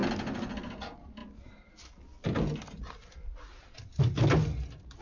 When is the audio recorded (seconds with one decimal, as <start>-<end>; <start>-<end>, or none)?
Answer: 0.0-5.0